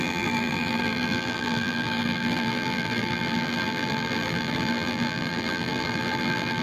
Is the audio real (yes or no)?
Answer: no